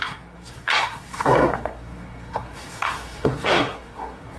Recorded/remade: remade